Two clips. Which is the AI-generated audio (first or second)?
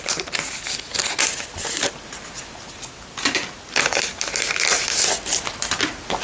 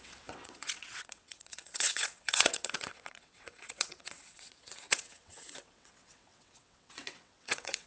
second